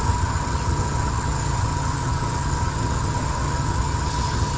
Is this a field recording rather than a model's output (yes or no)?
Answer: no